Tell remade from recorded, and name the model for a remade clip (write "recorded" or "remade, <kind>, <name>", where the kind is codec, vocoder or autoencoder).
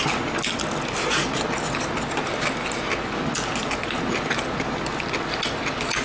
recorded